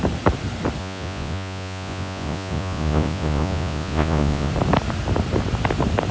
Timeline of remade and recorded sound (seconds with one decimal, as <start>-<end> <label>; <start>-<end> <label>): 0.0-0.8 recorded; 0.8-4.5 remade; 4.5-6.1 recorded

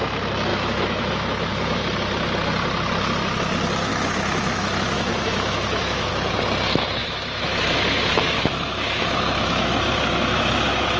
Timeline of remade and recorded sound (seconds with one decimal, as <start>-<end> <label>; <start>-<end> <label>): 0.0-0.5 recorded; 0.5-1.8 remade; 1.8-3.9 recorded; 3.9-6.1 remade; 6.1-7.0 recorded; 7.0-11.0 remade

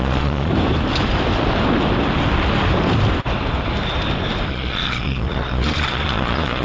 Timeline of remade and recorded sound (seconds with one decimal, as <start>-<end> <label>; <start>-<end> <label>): 0.0-0.5 remade; 0.5-4.5 recorded; 4.5-6.6 remade